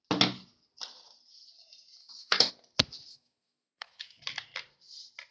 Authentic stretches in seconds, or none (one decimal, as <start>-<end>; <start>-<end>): 0.0-2.0; 2.5-3.1; 4.2-5.3